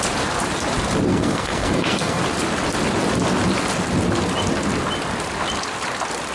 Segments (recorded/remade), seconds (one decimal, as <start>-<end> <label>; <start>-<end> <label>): 0.0-1.1 recorded; 1.1-2.2 remade; 2.2-6.3 recorded